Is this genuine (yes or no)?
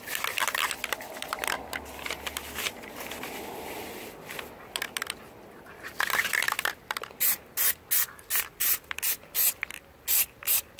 yes